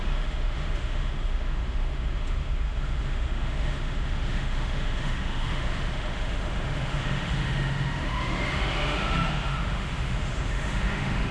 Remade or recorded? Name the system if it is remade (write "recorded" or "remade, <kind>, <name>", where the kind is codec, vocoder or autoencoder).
remade, autoencoder, DAC-VAE